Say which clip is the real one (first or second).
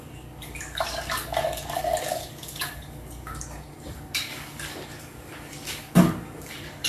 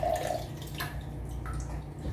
second